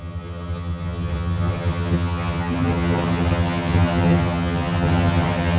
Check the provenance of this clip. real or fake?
fake